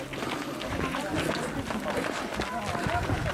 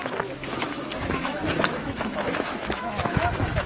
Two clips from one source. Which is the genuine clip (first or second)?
first